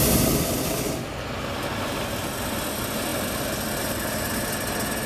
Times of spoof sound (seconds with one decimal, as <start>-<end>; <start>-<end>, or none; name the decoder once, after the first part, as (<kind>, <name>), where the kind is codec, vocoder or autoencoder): none